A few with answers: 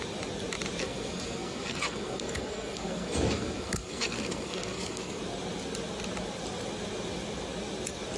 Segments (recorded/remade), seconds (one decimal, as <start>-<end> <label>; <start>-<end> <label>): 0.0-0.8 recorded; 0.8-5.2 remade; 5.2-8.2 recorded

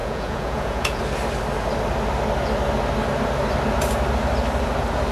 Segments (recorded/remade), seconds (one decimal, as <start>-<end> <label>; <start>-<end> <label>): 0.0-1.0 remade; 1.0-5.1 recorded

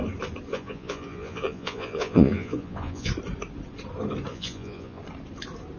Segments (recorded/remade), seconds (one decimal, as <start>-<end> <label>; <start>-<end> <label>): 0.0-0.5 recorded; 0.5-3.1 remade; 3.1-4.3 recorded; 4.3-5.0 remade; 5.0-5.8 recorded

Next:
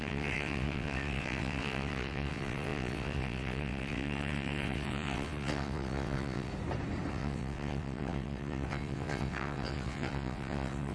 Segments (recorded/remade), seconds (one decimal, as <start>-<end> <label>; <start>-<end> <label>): 0.0-6.5 remade; 6.5-7.1 recorded; 7.1-10.9 remade